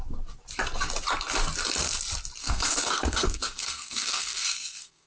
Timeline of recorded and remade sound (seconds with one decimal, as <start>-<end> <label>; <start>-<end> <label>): 0.0-2.4 recorded; 2.4-5.1 remade